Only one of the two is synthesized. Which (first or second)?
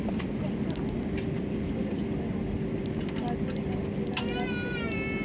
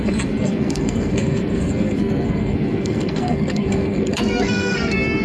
second